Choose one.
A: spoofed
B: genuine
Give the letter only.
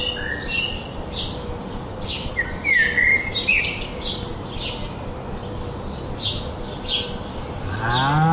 B